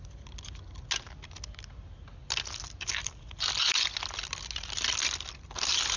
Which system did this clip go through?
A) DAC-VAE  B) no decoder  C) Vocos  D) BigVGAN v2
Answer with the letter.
B